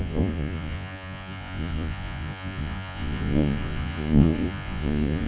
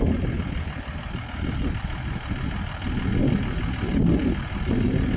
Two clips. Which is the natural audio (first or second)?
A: second